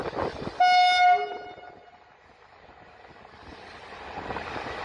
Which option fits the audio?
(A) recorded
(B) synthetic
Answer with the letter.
A